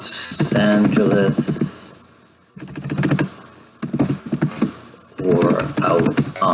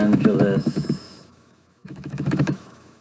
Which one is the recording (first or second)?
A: first